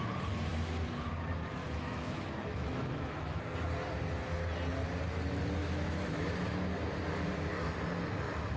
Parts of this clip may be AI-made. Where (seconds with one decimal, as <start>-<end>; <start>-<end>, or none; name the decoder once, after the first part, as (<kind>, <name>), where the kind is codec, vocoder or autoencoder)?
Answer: 0.5-1.1 (autoencoder, DAC-VAE); 1.6-3.4; 5.6-6.3